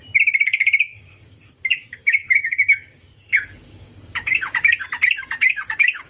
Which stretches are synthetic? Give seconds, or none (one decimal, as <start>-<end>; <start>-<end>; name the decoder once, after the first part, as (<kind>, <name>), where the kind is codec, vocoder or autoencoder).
0.9-4.6 (codec, DAC); 5.2-6.1